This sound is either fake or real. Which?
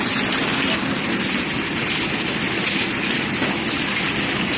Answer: real